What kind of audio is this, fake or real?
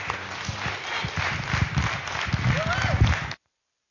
real